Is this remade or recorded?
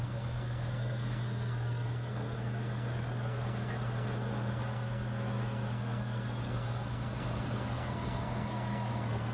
remade